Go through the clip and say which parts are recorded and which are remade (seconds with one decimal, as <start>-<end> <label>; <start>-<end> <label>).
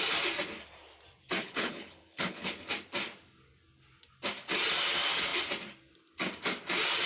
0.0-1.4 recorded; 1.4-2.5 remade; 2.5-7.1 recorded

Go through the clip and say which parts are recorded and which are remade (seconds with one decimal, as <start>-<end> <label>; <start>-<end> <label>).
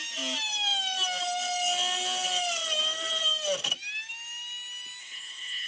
0.0-5.0 recorded; 5.0-5.7 remade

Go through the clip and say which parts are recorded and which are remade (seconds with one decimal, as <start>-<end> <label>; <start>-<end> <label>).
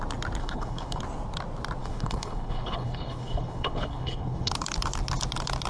0.0-0.4 recorded; 0.4-1.0 remade; 1.0-1.8 recorded; 1.8-4.5 remade; 4.5-5.7 recorded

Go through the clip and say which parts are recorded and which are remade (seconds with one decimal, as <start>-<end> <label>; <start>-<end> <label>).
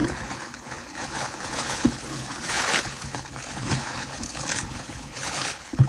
0.0-5.9 remade